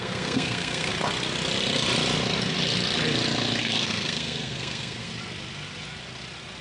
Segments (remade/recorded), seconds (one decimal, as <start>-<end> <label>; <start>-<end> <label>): 0.0-0.9 remade; 0.9-3.6 recorded; 3.6-5.1 remade; 5.1-6.6 recorded